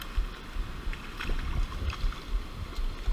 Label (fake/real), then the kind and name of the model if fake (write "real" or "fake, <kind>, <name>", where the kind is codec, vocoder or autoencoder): real